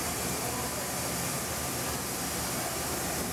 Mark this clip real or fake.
real